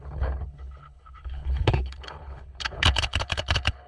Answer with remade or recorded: remade